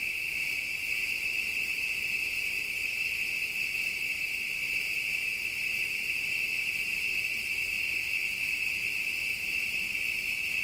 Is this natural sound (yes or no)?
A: yes